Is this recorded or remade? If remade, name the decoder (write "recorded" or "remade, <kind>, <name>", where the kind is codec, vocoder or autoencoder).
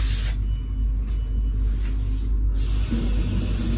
recorded